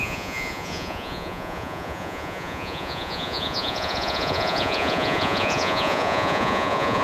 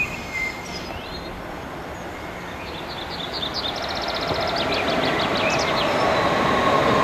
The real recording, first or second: second